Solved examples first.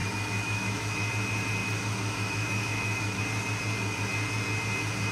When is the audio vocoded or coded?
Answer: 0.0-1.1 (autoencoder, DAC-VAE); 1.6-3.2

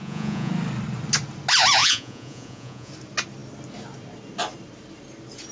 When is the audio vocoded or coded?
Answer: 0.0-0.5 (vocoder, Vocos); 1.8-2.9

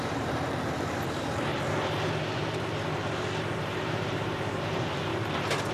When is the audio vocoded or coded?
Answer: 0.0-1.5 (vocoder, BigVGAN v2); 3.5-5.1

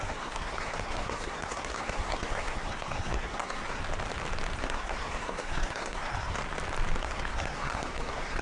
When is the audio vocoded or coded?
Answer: 0.0-3.8 (codec, SNAC); 4.6-6.4; 7.0-8.4

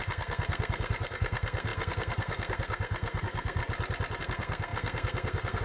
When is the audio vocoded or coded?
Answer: 0.0-3.6 (codec, SNAC); 4.2-5.6

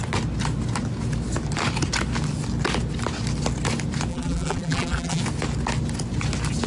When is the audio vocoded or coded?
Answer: 4.1-5.2 (vocoder, BigVGAN v2)

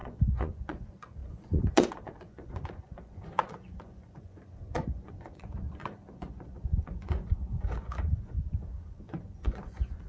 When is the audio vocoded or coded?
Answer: 0.0-10.1 (vocoder, Vocos)